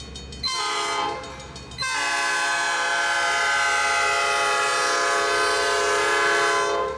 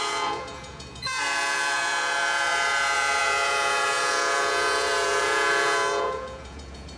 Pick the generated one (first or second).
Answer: second